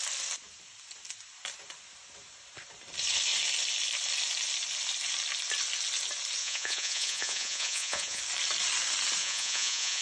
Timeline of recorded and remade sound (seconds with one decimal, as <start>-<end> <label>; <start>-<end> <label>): 0.0-6.4 recorded; 6.4-8.2 remade; 8.2-9.2 recorded; 9.2-10.0 remade